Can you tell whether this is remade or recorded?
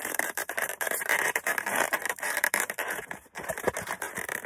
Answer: remade